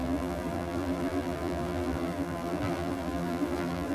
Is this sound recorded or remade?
remade